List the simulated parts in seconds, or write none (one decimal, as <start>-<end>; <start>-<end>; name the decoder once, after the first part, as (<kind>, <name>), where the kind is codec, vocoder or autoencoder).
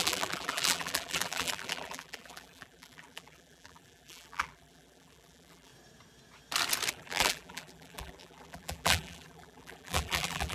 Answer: 0.0-5.7 (vocoder, BigVGAN v2); 6.9-10.5